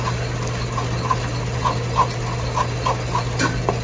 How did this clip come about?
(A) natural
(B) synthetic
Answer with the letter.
A